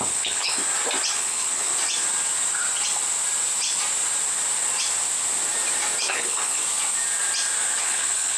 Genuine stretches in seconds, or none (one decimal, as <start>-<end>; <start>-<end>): 0.6-1.1; 1.7-6.1; 6.6-7.8